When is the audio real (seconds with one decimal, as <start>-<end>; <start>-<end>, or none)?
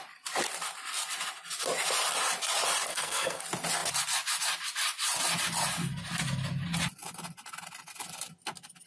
0.0-2.9; 3.4-8.9